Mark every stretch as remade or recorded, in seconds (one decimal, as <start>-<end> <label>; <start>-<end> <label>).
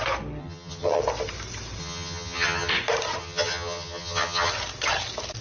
0.0-0.4 recorded; 0.4-1.0 remade; 1.0-1.8 recorded; 1.8-2.7 remade; 2.7-3.2 recorded; 3.2-4.5 remade; 4.5-5.4 recorded